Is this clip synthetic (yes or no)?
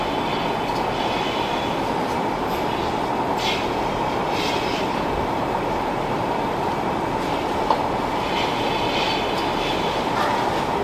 no